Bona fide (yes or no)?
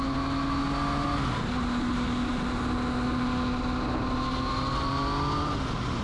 yes